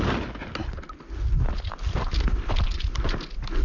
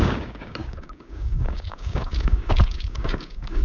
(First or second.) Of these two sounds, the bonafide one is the first